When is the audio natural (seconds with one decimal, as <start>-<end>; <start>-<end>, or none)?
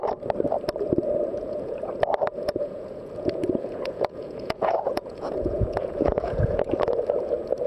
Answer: 0.0-1.3; 1.9-2.3; 6.7-7.7